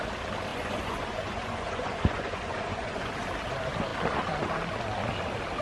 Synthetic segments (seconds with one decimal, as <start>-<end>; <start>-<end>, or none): 0.5-3.1